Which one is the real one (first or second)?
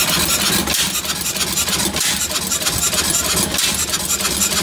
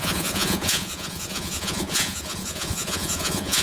first